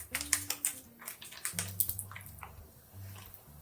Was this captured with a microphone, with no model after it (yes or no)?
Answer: yes